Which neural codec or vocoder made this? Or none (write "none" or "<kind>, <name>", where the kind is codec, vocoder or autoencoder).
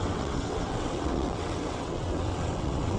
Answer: vocoder, WaveNeXt